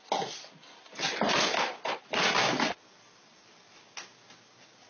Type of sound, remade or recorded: recorded